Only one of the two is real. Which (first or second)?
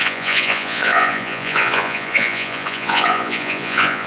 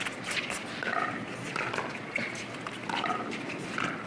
second